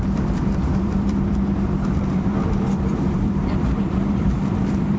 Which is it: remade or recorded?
remade